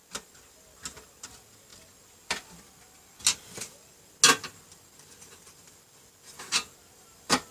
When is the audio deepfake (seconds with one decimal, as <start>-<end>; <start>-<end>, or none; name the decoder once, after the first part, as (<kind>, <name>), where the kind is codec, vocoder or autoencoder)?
none